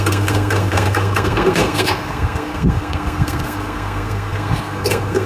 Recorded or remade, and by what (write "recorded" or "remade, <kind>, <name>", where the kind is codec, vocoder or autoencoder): remade, codec, SNAC